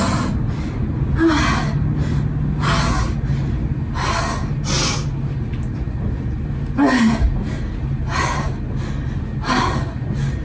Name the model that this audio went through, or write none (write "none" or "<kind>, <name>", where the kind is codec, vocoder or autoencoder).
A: none